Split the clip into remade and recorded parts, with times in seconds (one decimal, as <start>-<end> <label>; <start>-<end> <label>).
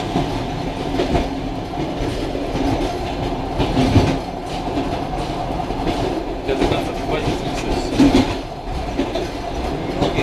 0.0-5.6 recorded; 5.6-6.2 remade; 6.2-7.2 recorded; 7.2-9.3 remade; 9.3-10.2 recorded